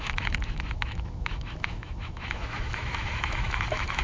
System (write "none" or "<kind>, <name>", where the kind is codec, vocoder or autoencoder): autoencoder, DAC-VAE